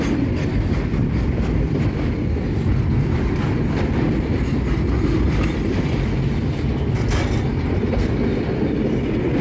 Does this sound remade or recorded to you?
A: recorded